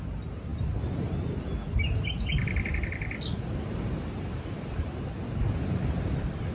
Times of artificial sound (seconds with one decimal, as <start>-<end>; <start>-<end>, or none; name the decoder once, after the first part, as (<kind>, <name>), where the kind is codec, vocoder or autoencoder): none